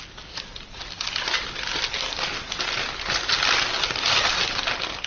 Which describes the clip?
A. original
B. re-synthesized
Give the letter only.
A